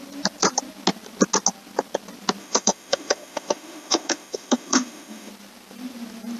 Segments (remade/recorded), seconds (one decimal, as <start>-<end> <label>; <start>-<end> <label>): 0.0-2.4 recorded; 2.4-5.3 remade; 5.3-6.4 recorded